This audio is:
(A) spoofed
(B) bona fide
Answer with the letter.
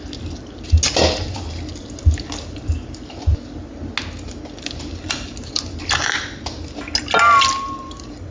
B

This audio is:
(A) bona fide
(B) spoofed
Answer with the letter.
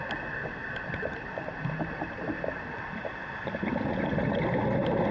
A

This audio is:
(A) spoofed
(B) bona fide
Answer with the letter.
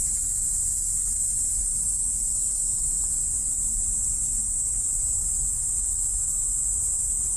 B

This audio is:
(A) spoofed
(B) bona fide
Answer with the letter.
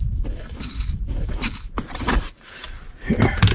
A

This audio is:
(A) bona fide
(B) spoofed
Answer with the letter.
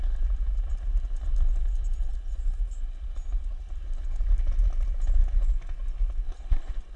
A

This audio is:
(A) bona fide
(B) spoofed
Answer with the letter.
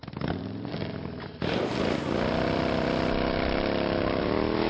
B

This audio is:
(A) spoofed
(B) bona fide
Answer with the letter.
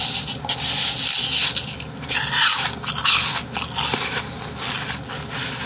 B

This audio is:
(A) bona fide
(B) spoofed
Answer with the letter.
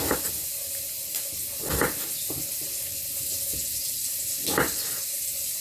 A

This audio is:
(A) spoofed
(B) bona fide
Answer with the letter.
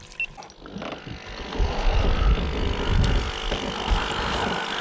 B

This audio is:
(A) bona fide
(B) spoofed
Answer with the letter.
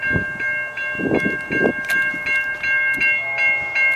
A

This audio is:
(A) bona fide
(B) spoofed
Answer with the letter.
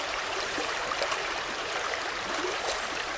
B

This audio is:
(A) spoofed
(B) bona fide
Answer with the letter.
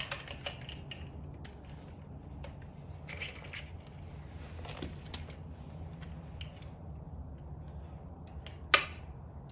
B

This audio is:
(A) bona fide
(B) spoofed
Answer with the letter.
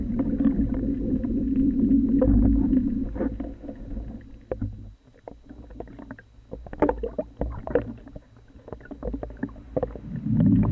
A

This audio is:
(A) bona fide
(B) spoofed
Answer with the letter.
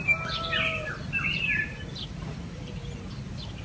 B